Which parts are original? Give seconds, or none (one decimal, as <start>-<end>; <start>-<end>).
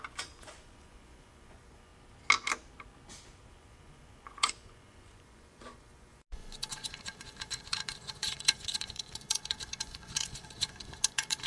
1.9-3.5